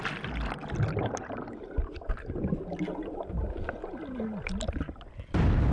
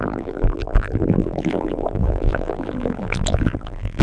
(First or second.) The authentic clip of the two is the first